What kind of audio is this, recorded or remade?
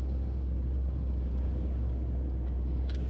remade